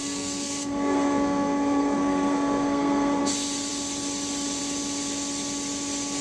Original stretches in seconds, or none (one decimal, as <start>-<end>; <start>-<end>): 3.2-6.2

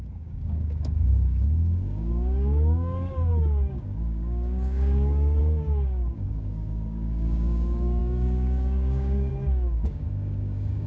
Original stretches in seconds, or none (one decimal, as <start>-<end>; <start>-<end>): none

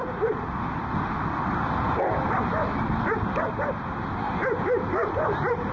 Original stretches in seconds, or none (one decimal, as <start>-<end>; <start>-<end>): 0.0-5.7

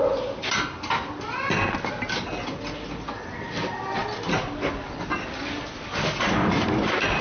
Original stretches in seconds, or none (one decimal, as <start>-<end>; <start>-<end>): 0.0-7.2

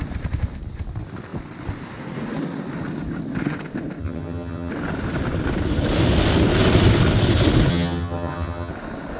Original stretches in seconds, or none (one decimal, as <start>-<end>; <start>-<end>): 0.0-4.0; 4.7-7.7; 8.7-9.2